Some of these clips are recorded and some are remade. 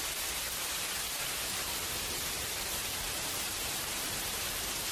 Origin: remade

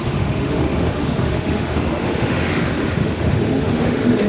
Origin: remade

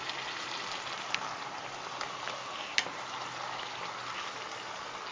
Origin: recorded